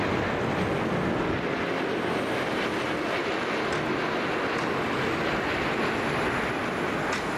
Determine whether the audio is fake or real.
real